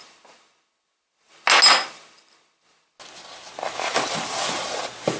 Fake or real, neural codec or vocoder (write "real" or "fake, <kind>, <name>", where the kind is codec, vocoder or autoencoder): real